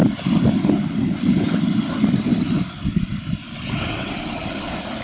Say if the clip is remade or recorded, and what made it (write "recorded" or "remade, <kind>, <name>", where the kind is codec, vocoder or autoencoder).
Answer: recorded